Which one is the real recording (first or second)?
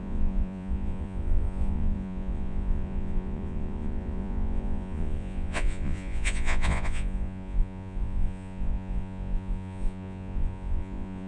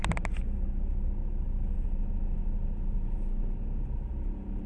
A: second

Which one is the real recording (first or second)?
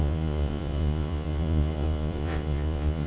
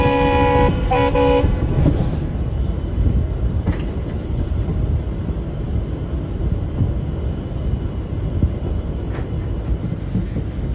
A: second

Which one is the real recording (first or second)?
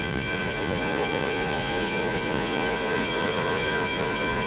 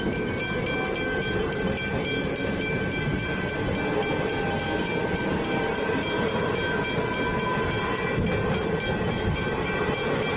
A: second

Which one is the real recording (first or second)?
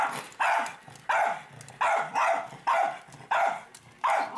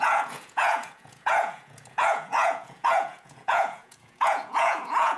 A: first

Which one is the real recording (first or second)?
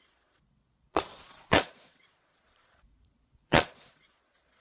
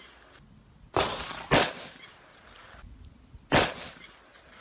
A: second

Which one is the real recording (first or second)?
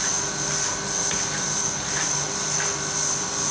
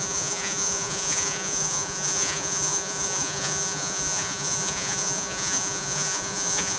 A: first